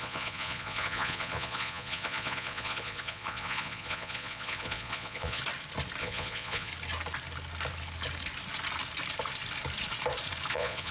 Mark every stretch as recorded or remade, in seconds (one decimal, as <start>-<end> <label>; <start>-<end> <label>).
0.0-5.4 remade; 5.4-6.0 recorded; 6.0-6.7 remade; 6.7-10.5 recorded; 10.5-10.9 remade